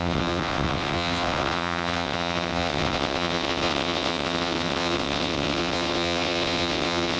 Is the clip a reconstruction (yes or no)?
yes